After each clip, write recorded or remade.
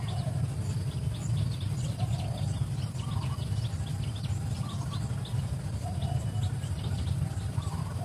recorded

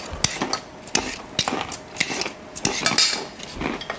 recorded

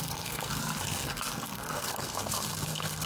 remade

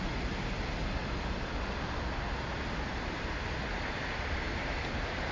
recorded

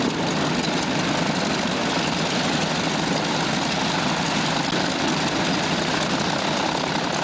recorded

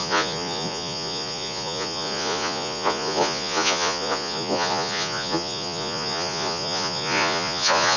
remade